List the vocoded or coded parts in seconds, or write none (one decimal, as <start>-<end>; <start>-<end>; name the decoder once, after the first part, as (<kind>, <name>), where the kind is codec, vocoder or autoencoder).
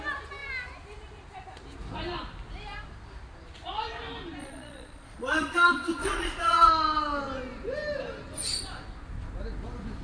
4.4-6.7 (vocoder, Vocos)